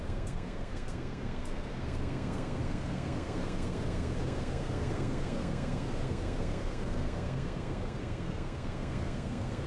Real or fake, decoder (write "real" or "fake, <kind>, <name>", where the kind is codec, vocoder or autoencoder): fake, codec, SNAC